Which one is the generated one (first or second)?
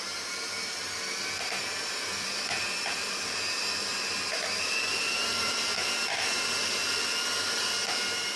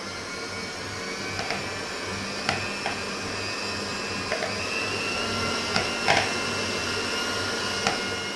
first